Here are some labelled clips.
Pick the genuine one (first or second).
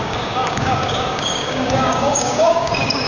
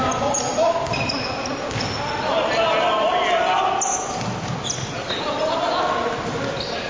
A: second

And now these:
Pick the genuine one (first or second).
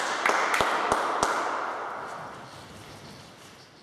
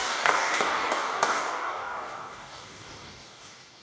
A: first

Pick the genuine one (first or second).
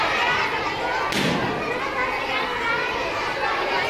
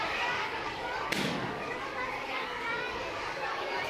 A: first